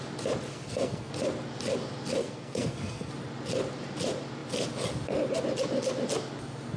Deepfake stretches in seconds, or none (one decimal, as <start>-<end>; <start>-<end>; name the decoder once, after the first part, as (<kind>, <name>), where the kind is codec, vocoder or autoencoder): 0.5-1.1 (codec, SNAC); 2.2-3.1